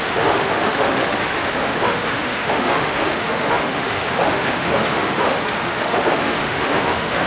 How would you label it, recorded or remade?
remade